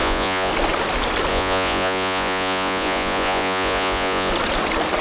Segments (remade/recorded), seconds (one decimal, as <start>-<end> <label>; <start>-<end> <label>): 0.0-0.5 remade; 0.5-1.3 recorded; 1.3-4.3 remade; 4.3-5.0 recorded